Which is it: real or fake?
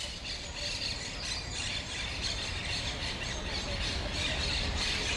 real